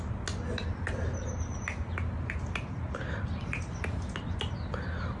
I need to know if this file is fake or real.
real